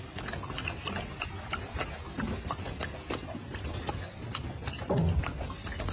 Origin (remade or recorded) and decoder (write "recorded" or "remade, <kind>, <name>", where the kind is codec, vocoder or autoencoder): recorded